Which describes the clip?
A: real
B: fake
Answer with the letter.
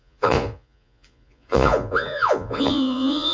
B